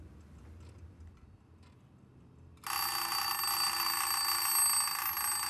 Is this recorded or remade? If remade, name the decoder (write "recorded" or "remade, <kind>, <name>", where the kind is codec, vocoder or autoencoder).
recorded